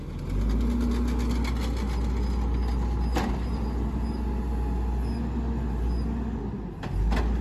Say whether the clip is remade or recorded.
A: recorded